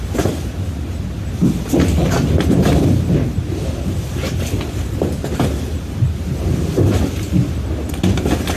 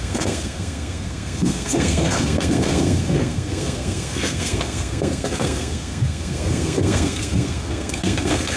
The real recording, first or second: first